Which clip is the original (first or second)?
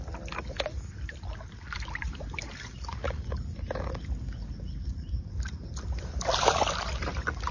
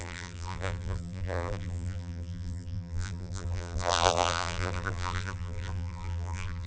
first